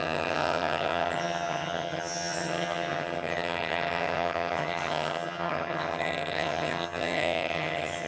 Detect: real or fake fake